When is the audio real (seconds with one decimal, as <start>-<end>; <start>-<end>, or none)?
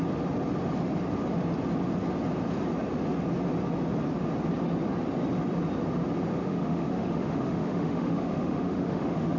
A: 0.0-6.4